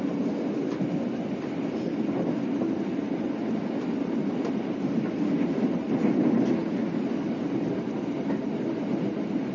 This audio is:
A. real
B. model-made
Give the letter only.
A